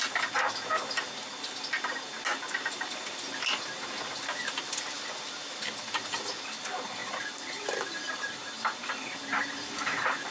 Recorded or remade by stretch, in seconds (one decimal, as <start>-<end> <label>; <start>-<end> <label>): 0.0-7.0 recorded; 7.0-10.3 remade